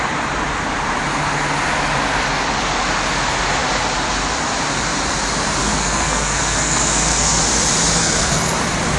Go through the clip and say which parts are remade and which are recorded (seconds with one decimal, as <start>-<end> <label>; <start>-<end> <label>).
0.0-5.6 recorded; 5.6-7.4 remade; 7.4-8.0 recorded; 8.0-8.6 remade; 8.6-9.0 recorded